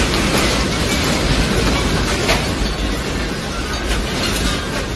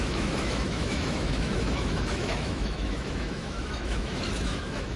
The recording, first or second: first